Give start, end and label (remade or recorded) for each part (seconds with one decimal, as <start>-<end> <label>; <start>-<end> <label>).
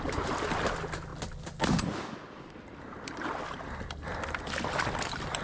0.0-5.4 recorded